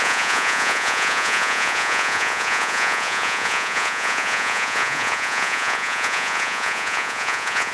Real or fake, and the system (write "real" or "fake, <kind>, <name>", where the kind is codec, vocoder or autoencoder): fake, vocoder, Vocos